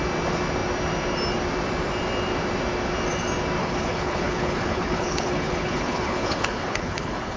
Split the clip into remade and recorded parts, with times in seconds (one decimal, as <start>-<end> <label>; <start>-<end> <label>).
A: 0.0-3.6 recorded; 3.6-7.4 remade